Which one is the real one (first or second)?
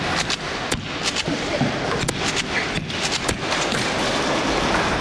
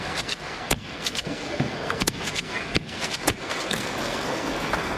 first